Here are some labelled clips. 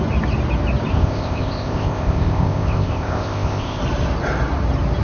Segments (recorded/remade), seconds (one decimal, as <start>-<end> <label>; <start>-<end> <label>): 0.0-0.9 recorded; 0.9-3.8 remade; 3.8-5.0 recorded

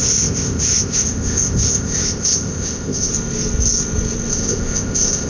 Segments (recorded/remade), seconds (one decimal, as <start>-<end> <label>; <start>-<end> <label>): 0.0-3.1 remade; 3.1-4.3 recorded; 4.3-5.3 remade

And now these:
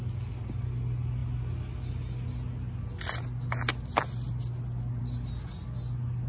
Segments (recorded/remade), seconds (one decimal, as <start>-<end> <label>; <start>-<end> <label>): 0.0-6.3 recorded

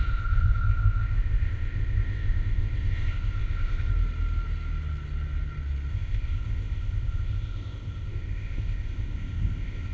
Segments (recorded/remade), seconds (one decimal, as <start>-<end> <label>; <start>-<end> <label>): 0.0-3.9 remade; 3.9-5.9 recorded; 5.9-9.9 remade